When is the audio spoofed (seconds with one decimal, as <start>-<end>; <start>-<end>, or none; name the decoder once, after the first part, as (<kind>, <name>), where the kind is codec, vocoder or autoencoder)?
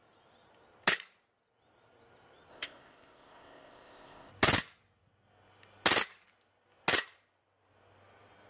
2.5-4.3 (codec, ZipCodec)